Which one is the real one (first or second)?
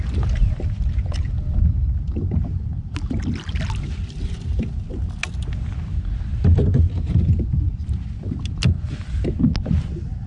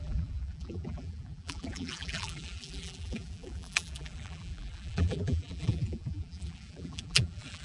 first